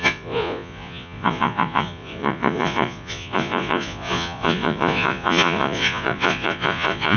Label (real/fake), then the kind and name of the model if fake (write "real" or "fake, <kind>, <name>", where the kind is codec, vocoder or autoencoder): fake, vocoder, Vocos